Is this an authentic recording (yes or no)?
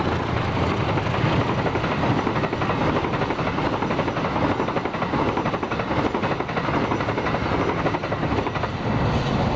yes